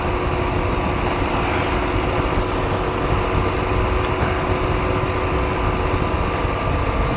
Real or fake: real